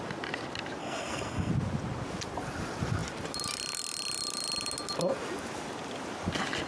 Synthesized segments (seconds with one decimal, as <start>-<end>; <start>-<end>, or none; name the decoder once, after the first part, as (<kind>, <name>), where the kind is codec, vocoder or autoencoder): 0.8-1.5 (codec, SNAC)